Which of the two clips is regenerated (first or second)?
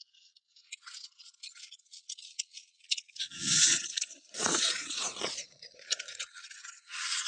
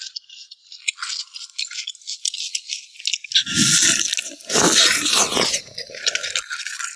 first